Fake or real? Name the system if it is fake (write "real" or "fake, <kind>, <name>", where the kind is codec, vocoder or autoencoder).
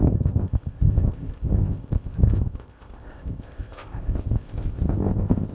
fake, codec, ZipCodec